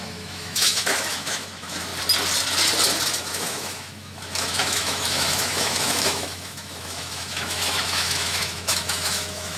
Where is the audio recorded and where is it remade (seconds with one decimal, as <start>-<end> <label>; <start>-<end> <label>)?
0.0-1.9 remade; 1.9-3.2 recorded; 3.2-9.6 remade